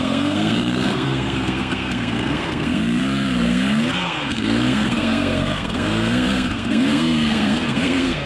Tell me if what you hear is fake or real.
fake